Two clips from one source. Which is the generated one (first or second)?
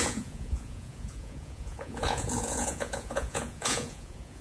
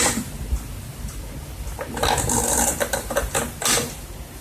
first